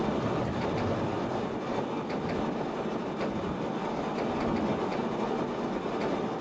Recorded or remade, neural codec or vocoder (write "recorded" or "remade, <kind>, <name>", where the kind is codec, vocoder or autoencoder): recorded